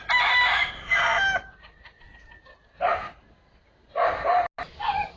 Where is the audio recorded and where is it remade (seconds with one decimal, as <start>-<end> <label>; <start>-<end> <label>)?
0.0-5.2 recorded